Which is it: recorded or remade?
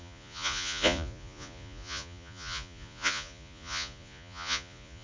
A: remade